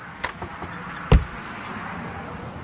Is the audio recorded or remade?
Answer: recorded